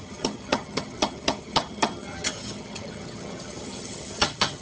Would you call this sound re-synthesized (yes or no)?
yes